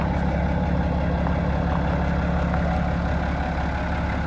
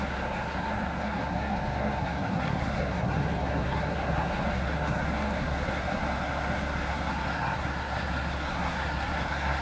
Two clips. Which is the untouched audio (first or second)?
first